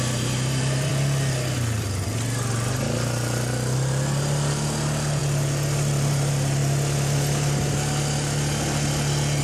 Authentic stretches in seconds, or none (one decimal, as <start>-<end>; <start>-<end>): 0.9-5.2; 6.6-9.4